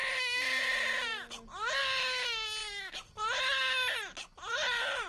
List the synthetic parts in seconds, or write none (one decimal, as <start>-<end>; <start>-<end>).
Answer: none

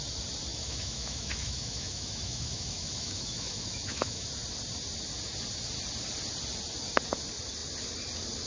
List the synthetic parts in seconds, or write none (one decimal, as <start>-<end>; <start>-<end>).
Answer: 0.5-4.3

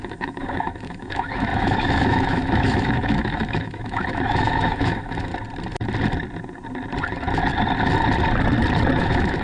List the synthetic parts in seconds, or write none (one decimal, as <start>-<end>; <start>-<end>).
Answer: 0.0-5.3; 9.0-9.4

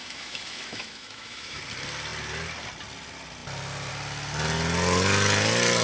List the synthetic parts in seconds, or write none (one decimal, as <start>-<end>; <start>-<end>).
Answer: 0.0-1.6

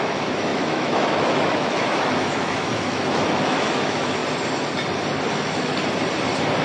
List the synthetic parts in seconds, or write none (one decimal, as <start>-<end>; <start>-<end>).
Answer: 0.0-4.2; 5.3-5.7